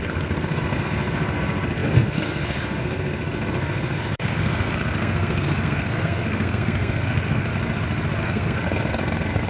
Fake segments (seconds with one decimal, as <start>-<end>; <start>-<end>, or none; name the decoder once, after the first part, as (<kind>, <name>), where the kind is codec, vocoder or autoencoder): 0.0-7.5 (codec, SNAC); 8.2-9.5